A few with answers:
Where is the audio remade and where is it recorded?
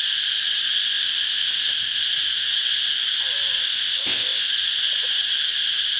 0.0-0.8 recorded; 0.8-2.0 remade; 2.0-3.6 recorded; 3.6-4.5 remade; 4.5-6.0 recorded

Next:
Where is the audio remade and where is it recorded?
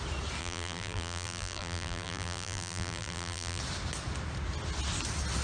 0.0-0.4 recorded; 0.4-3.6 remade; 3.6-5.4 recorded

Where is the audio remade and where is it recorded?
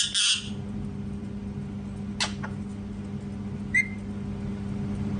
0.0-5.2 recorded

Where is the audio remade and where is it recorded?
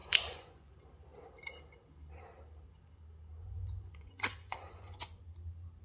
0.0-0.7 remade; 0.7-3.4 recorded; 3.4-5.2 remade; 5.2-5.8 recorded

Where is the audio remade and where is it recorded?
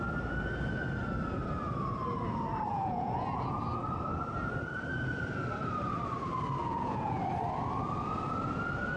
0.0-2.7 recorded; 2.7-3.6 remade; 3.6-6.6 recorded; 6.6-7.2 remade; 7.2-9.0 recorded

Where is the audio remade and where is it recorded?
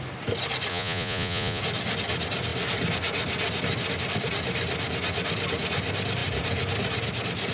0.0-0.7 recorded; 0.7-1.6 remade; 1.6-7.5 recorded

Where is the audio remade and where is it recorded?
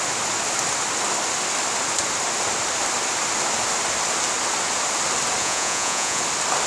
0.0-5.4 recorded; 5.4-6.2 remade; 6.2-6.7 recorded